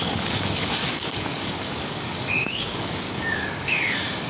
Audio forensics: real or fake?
fake